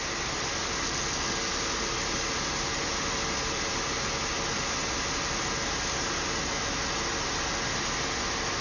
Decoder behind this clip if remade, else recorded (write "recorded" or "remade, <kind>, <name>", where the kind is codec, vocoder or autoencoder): recorded